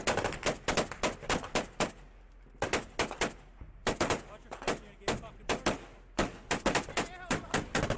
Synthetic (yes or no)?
no